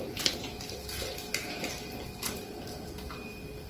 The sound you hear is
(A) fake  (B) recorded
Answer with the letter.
B